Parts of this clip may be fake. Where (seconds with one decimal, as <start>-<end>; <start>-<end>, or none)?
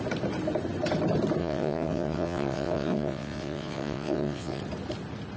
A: 1.4-4.6